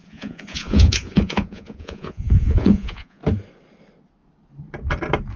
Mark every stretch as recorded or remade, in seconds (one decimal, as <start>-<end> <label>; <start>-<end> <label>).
0.0-3.2 remade; 3.2-5.4 recorded